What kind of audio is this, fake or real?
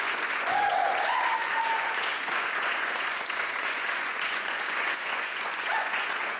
fake